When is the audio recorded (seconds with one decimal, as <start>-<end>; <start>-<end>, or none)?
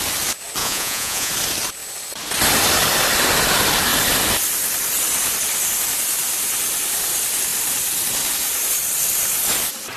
0.0-0.6; 1.3-10.0